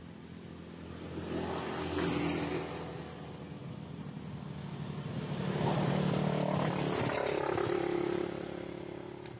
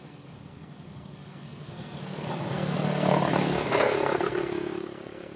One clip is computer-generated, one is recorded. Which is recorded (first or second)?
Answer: first